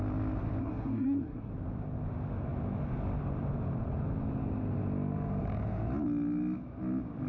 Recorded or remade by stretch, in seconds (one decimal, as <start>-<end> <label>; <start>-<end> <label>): 0.0-0.6 recorded; 0.6-1.5 remade; 1.5-7.3 recorded